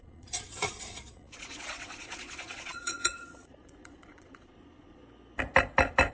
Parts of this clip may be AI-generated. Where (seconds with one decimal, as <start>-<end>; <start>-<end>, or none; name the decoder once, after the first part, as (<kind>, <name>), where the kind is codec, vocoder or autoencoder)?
0.0-5.0 (vocoder, Vocos)